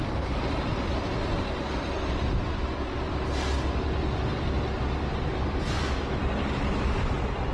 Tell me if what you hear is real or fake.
real